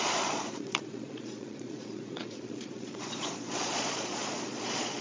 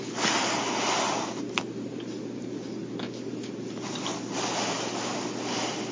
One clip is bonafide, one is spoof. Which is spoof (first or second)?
first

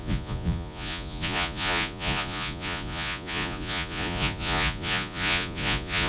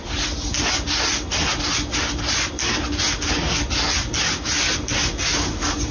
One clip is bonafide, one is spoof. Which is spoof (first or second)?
first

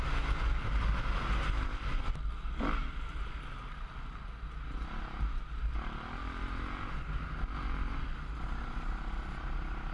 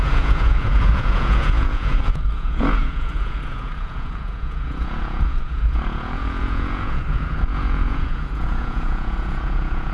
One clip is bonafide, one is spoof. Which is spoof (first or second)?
second